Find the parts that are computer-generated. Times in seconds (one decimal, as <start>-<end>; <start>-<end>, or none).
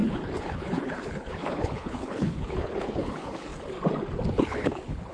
0.0-3.5; 4.3-5.1